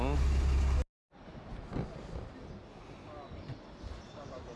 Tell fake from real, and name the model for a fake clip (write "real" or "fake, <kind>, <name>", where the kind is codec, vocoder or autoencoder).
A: real